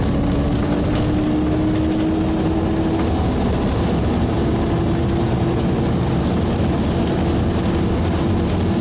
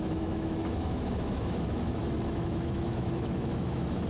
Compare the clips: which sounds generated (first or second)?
second